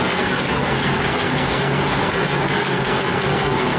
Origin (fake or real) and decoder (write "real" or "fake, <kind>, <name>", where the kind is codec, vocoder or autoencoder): fake, codec, SNAC